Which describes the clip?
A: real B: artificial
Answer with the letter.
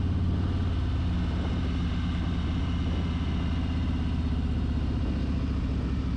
A